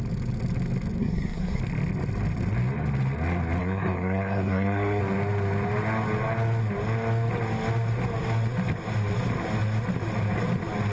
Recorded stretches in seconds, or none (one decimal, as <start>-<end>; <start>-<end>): 0.0-1.0; 1.6-3.6; 5.0-10.9